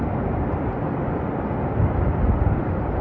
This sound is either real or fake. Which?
real